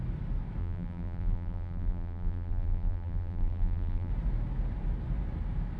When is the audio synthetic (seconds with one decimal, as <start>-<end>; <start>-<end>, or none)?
0.6-4.1